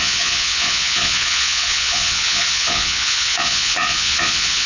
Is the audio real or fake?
fake